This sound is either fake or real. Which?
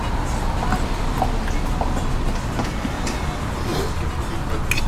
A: real